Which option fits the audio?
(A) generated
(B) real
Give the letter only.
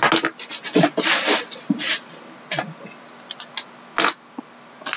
B